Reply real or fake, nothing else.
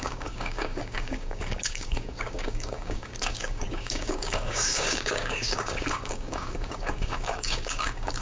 fake